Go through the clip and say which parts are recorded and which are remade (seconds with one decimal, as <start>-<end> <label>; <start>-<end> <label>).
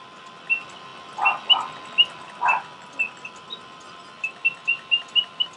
0.0-5.6 recorded